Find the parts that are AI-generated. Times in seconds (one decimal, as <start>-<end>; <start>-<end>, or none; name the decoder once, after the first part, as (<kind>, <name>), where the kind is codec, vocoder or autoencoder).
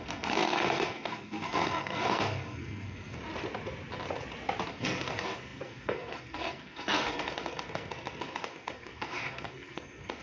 0.0-3.2 (codec, SNAC); 4.7-10.2